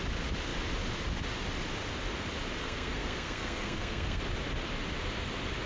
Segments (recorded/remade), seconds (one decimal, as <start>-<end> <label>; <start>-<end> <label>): 0.0-2.6 recorded; 2.6-4.2 remade; 4.2-5.7 recorded